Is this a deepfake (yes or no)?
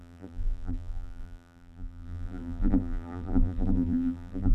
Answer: yes